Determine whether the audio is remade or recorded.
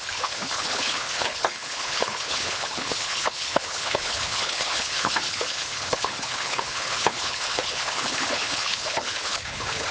remade